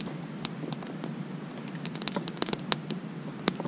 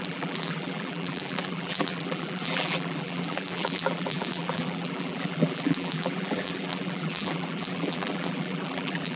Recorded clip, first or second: first